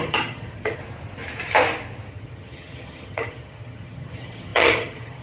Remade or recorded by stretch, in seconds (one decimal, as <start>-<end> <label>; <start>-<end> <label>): 0.0-0.8 remade; 0.8-2.1 recorded; 2.1-5.2 remade